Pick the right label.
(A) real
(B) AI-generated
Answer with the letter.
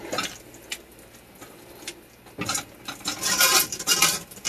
A